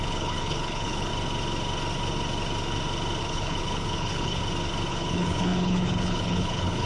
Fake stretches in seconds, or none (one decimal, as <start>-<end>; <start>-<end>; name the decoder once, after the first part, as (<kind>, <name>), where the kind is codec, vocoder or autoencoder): 0.0-1.1 (codec, HILCodec); 3.2-4.4; 4.9-6.9